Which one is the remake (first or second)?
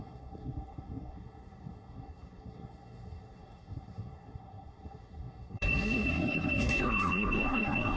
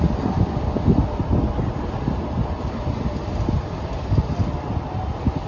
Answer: first